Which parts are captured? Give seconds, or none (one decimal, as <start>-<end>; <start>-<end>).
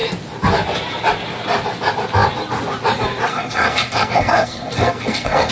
0.0-3.3